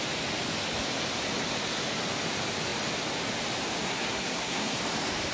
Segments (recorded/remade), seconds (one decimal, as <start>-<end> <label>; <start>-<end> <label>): 0.0-3.8 recorded; 3.8-4.8 remade; 4.8-5.3 recorded